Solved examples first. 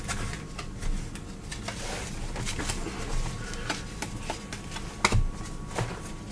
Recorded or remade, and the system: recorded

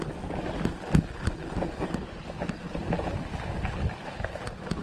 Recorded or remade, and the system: recorded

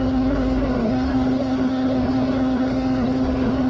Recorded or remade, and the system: remade, codec, SNAC